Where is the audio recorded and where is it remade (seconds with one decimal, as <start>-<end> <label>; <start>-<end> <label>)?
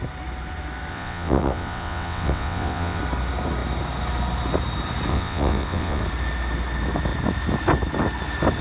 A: 0.0-0.9 recorded; 0.9-3.0 remade; 3.0-5.1 recorded; 5.1-6.0 remade; 6.0-8.6 recorded